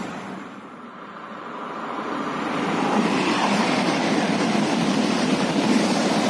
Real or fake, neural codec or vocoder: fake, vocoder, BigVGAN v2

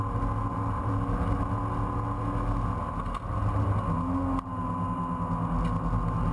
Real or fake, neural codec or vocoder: real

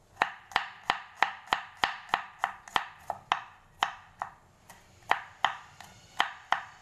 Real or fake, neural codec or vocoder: real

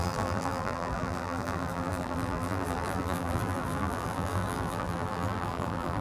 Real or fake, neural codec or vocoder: fake, vocoder, BigVGAN v2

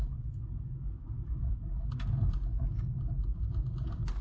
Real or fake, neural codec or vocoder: real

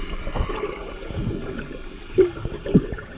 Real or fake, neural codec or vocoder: fake, vocoder, BigVGAN v2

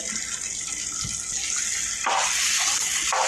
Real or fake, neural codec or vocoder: real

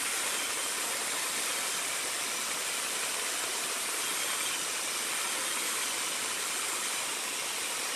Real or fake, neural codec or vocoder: real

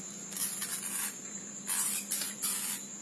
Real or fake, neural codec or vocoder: fake, vocoder, BigVGAN v2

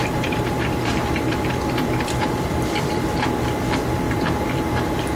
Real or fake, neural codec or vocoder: fake, vocoder, BigVGAN v2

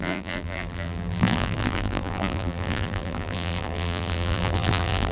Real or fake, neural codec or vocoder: fake, vocoder, BigVGAN v2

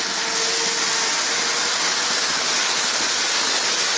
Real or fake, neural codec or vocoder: real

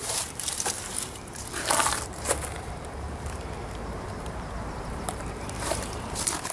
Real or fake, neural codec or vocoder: fake, vocoder, BigVGAN v2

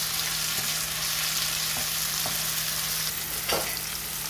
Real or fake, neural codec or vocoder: real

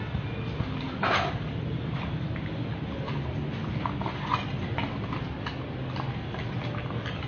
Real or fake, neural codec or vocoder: real